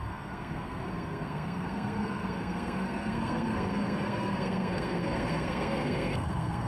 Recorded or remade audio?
remade